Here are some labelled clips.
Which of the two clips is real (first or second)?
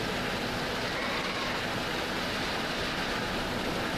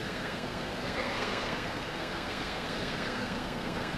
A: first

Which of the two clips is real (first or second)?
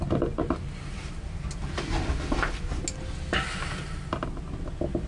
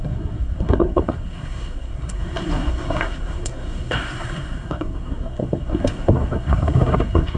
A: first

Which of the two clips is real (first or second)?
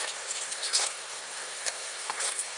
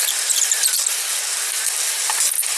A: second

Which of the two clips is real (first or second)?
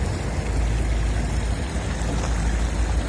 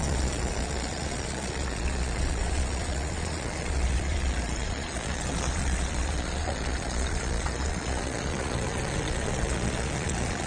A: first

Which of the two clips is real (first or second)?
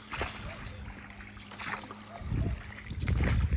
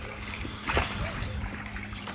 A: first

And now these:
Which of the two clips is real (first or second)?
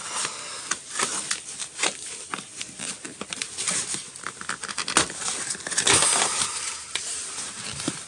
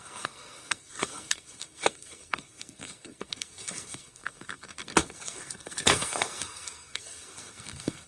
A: first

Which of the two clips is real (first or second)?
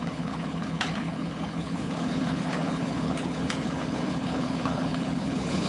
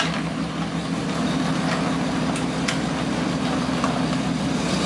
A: second